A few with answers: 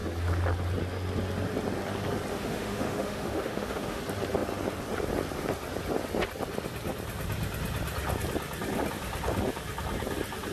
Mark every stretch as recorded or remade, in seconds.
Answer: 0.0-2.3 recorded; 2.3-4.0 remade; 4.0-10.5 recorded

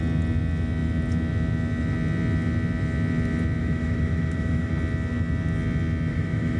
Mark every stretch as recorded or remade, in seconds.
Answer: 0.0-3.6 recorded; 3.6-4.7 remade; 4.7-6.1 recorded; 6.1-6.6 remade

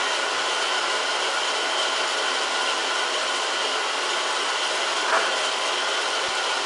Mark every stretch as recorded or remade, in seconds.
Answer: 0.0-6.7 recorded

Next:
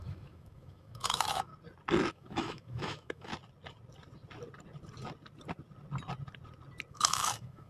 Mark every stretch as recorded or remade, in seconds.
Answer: 0.0-1.5 remade; 1.5-2.1 recorded; 2.1-3.3 remade; 3.3-6.9 recorded; 6.9-7.7 remade

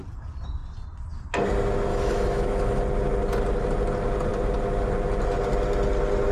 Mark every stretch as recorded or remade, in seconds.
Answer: 0.0-1.9 recorded; 1.9-2.8 remade; 2.8-6.3 recorded

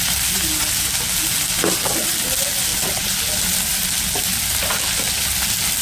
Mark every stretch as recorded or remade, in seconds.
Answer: 0.0-5.8 recorded

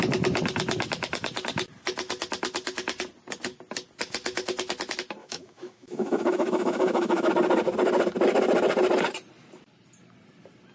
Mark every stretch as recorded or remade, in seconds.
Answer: 0.0-5.2 recorded; 5.2-7.3 remade; 7.3-10.7 recorded

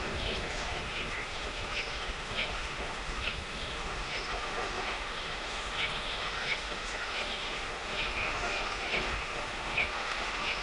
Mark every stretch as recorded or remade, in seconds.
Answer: 0.0-10.6 remade